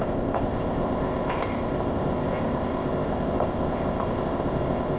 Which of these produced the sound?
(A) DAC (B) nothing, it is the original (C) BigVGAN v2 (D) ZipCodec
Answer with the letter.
D